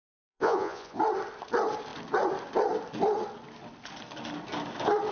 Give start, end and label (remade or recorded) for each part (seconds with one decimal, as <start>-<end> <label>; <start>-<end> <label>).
0.0-1.0 remade; 1.0-5.1 recorded